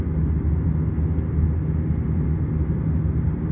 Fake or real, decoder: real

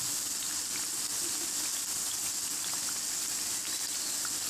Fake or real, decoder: real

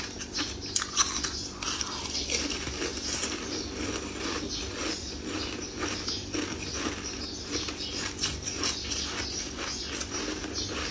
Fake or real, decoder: real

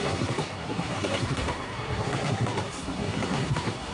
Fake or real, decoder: fake, codec, SNAC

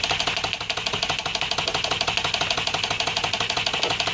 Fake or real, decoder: real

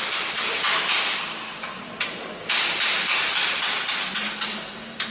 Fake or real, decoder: real